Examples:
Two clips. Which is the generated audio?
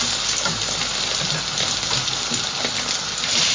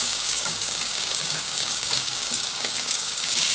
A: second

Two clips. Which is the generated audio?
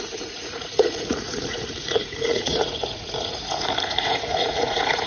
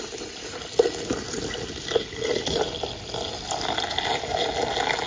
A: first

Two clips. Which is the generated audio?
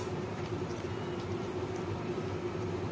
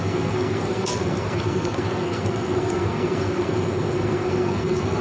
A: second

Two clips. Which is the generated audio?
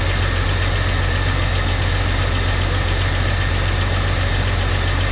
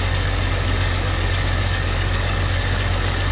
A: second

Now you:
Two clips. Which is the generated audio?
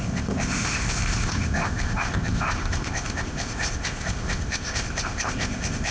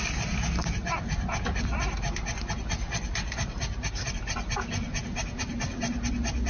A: first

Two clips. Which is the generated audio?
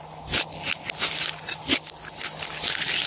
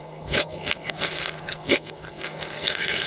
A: second